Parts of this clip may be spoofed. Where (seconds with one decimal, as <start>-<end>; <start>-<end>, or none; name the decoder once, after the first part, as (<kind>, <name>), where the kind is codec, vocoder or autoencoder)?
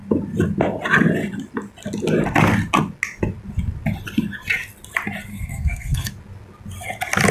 5.3-6.1 (codec, SNAC)